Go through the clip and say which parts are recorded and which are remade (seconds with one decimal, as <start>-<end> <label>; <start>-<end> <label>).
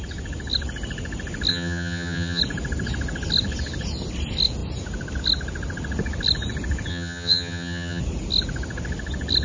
0.0-1.5 recorded; 1.5-2.4 remade; 2.4-6.9 recorded; 6.9-8.0 remade; 8.0-9.4 recorded